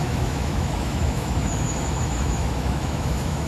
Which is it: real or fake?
fake